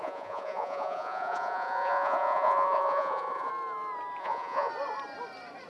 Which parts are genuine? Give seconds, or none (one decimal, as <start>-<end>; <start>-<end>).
3.5-4.2; 4.7-5.7